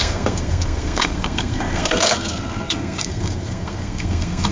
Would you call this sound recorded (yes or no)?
no